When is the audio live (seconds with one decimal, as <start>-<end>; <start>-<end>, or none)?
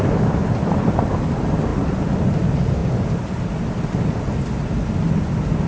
none